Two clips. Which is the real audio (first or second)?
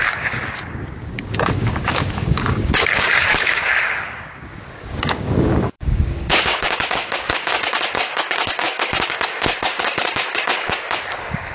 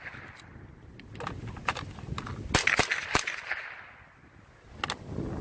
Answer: second